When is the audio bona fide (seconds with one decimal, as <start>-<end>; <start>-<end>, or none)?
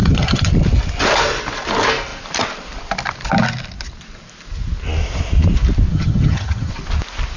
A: 0.5-5.9; 6.7-7.4